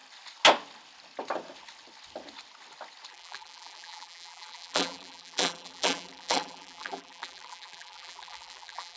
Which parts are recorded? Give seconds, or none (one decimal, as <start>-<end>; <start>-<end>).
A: 0.0-3.1